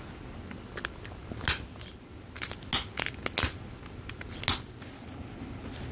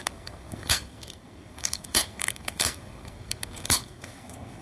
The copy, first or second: second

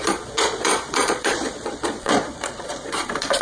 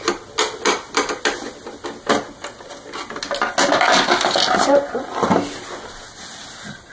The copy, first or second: first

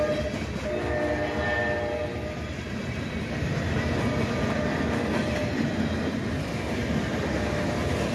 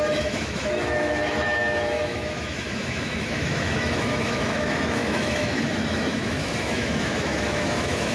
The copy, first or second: second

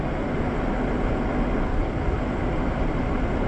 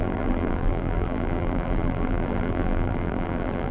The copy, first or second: second